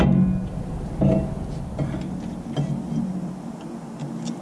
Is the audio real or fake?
real